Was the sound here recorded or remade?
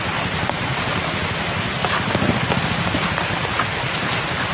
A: recorded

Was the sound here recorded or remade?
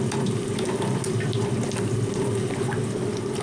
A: recorded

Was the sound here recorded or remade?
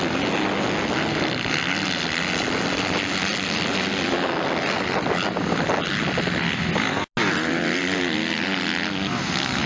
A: recorded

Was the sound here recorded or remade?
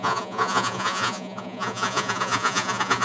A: remade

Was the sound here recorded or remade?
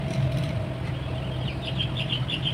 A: recorded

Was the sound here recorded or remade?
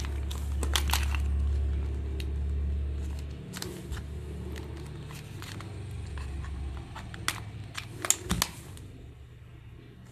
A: recorded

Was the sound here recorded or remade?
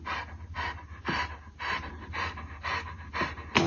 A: recorded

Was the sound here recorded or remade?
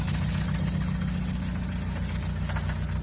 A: recorded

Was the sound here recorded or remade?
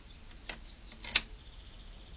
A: recorded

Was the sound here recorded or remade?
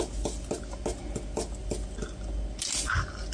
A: recorded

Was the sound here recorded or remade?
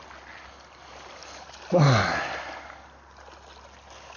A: recorded